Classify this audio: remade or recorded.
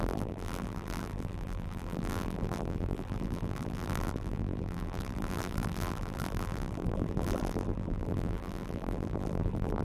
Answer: remade